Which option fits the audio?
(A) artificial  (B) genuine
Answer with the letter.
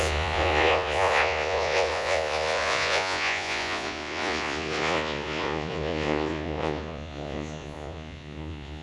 A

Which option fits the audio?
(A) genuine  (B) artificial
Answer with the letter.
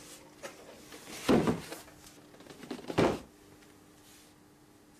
A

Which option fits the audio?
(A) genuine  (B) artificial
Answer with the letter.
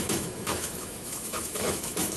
B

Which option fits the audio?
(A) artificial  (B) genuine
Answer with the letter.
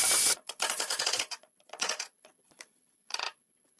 A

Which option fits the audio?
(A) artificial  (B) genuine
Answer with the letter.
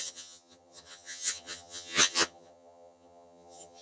A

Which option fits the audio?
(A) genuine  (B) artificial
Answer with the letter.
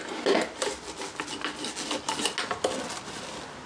A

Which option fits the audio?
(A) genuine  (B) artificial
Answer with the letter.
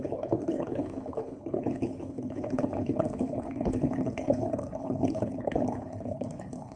B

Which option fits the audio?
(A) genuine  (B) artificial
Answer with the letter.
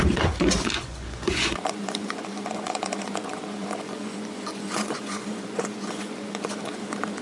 B